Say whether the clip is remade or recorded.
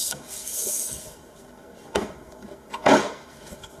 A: remade